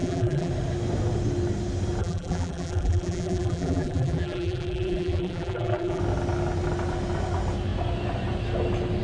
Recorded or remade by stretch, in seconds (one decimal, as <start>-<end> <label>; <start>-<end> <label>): 0.0-0.5 remade; 0.5-2.0 recorded; 2.0-6.0 remade; 6.0-9.0 recorded